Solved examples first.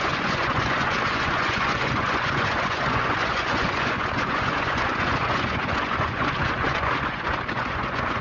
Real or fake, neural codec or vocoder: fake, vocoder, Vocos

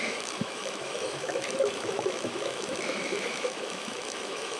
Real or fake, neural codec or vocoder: fake, autoencoder, DAC-VAE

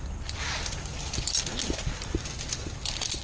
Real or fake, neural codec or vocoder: real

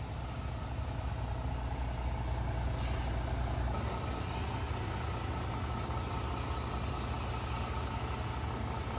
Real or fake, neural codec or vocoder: real